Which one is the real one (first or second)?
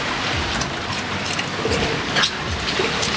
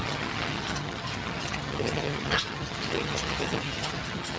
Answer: first